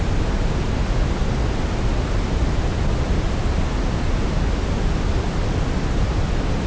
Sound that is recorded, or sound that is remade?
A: recorded